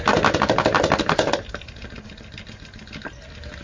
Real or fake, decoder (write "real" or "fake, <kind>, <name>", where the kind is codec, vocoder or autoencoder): real